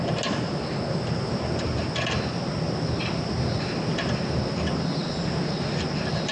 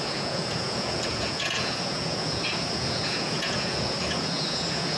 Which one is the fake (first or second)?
second